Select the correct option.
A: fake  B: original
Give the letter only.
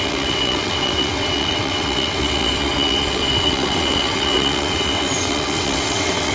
A